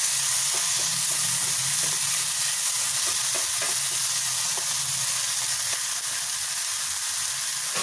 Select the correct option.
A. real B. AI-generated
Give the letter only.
A